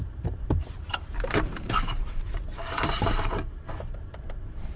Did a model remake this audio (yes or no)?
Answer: yes